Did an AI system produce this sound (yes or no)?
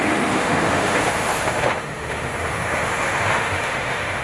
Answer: yes